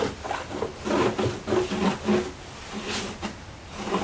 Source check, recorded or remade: recorded